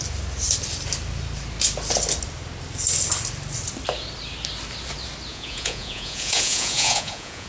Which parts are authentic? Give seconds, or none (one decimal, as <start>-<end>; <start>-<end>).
0.0-5.3